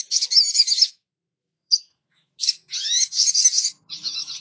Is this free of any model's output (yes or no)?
no